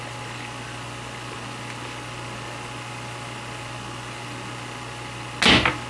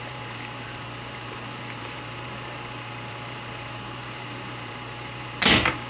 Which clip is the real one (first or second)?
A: first